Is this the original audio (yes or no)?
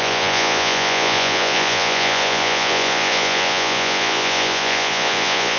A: no